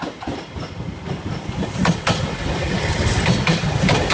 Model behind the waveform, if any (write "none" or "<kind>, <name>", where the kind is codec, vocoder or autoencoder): vocoder, BigVGAN v2